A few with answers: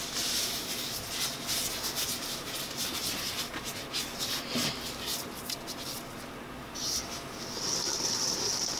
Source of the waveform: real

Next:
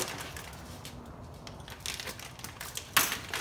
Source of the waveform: real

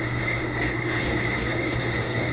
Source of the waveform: fake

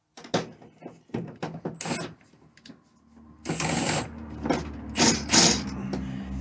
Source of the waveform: real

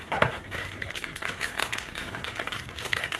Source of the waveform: fake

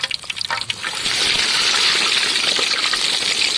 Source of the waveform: real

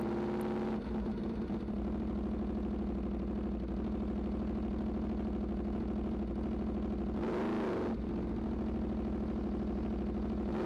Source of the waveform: real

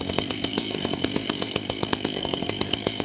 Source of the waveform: fake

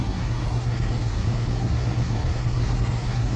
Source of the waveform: fake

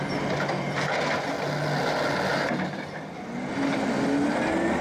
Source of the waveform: real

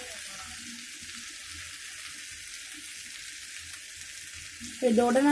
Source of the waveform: real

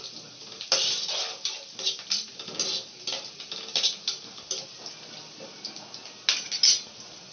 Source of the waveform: real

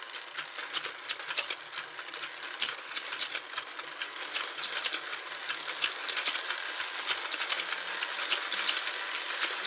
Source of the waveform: real